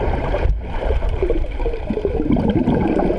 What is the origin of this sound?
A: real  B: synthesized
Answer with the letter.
B